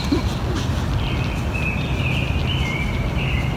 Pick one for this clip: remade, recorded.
recorded